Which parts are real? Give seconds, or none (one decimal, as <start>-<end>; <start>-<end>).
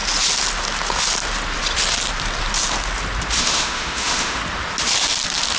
0.0-3.4; 4.4-5.6